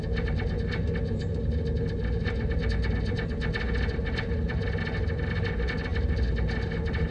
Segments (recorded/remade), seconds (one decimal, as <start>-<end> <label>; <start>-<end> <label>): 0.0-7.1 recorded